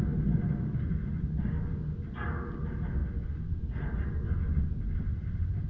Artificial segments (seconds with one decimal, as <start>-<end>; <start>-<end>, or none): none